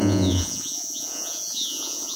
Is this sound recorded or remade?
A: remade